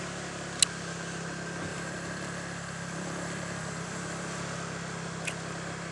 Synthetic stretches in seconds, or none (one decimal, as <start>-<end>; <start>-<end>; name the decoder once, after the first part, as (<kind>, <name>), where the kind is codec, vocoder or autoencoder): 1.7-4.4 (vocoder, BigVGAN v2)

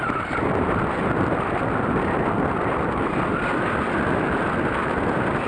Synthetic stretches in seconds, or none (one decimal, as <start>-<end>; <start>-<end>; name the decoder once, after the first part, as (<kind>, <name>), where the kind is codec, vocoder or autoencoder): none

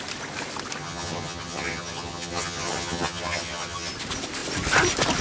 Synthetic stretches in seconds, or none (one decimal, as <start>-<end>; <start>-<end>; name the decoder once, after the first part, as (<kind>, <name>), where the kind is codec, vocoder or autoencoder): 0.8-3.9 (vocoder, HiFi-GAN)

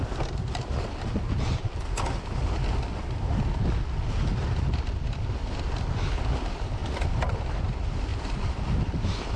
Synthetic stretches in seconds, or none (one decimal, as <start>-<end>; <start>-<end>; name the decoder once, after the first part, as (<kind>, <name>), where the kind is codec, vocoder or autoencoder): 8.1-9.0 (vocoder, BigVGAN v2)

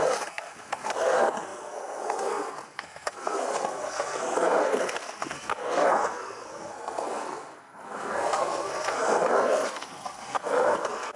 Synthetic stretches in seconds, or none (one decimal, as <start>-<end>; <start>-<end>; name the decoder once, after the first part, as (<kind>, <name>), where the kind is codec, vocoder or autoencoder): 0.0-11.2 (codec, SNAC)

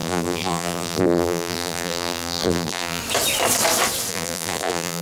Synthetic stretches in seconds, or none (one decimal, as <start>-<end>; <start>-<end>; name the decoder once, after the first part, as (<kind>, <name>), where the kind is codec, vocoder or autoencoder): 0.0-3.0 (vocoder, BigVGAN v2); 4.1-5.0

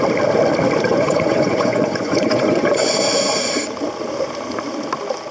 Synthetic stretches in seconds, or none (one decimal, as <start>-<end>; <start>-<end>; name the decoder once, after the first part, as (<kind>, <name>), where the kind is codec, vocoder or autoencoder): 0.9-2.9 (vocoder, Vocos)